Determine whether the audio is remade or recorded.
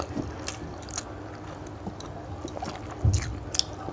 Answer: recorded